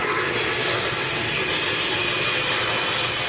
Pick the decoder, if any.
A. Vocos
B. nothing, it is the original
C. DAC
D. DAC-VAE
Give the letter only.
B